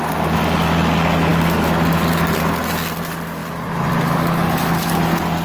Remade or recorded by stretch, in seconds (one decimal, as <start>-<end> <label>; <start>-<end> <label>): 0.0-3.4 recorded; 3.4-3.9 remade; 3.9-5.4 recorded